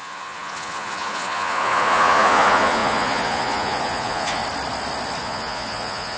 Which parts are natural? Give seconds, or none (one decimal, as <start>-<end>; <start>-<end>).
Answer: 4.4-5.2